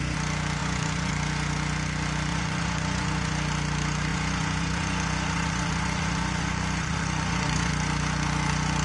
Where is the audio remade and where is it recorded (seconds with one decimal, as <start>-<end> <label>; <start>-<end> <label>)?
0.0-0.6 recorded; 0.6-1.1 remade; 1.1-2.3 recorded; 2.3-3.3 remade; 3.3-4.1 recorded; 4.1-7.7 remade; 7.7-8.8 recorded